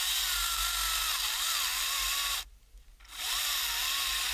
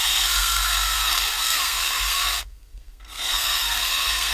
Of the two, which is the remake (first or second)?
second